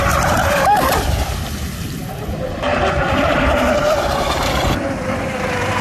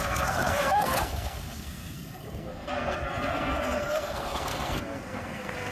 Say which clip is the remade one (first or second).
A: second